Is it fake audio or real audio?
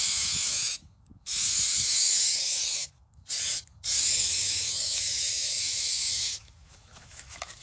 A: fake